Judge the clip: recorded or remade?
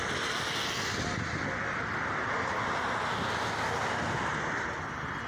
recorded